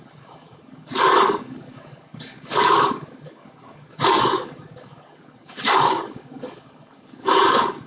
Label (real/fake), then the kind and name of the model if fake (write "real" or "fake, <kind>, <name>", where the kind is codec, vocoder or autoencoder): fake, codec, DAC